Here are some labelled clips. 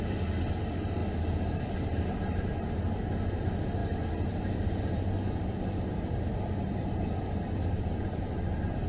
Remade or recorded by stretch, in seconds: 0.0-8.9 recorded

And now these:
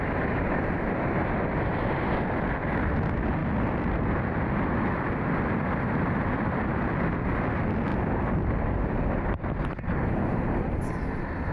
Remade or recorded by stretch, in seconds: 0.0-3.4 recorded; 3.4-7.4 remade; 7.4-7.9 recorded; 7.9-8.5 remade; 8.5-11.5 recorded